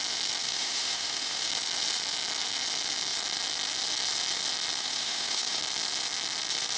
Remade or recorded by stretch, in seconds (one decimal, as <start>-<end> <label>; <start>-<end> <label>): 0.0-0.4 recorded; 0.4-1.5 remade; 1.5-4.8 recorded; 4.8-5.6 remade; 5.6-6.8 recorded